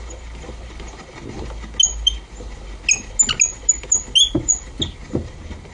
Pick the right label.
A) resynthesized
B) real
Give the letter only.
B